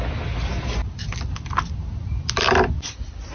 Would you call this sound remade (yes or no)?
no